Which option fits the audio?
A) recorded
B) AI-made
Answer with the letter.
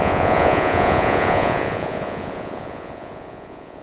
B